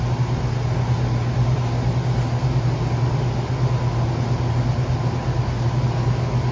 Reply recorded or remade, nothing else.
recorded